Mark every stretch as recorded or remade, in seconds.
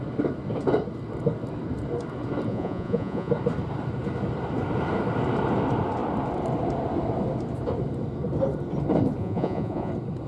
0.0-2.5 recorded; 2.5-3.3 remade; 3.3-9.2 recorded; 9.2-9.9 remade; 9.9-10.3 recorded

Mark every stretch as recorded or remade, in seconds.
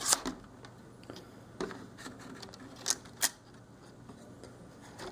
0.0-5.1 recorded